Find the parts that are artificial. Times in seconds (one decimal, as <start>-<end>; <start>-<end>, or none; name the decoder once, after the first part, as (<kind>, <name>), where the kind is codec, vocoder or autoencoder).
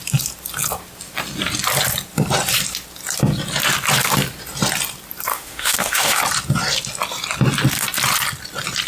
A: 5.3-6.2 (autoencoder, DAC-VAE)